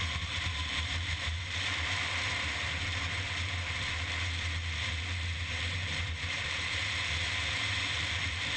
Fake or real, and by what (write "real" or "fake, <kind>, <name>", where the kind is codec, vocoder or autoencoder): fake, vocoder, BigVGAN v2